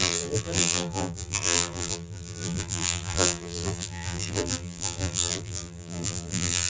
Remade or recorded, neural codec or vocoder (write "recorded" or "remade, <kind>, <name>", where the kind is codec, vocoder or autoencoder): remade, vocoder, BigVGAN v2